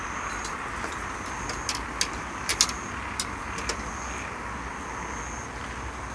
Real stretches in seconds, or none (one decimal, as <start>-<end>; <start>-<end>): 0.0-6.1